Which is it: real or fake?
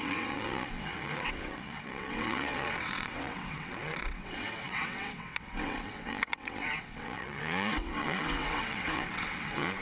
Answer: fake